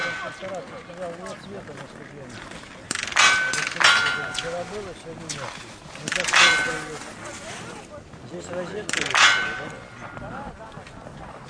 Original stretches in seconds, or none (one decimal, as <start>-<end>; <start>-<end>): 0.0-11.5